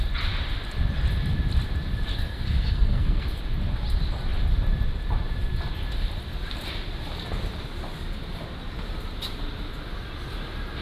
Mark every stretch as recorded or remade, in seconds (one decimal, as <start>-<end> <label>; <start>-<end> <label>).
0.0-2.1 recorded; 2.1-3.4 remade; 3.4-10.8 recorded